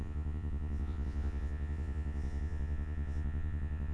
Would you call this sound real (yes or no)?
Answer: no